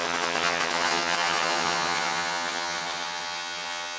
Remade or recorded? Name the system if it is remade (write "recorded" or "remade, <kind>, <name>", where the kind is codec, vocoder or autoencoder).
remade, vocoder, HiFi-GAN